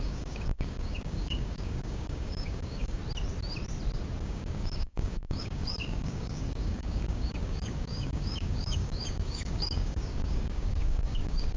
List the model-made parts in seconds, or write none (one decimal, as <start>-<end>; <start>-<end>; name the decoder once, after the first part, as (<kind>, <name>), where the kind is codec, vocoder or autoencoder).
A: 0.0-3.0 (codec, DAC); 4.2-11.6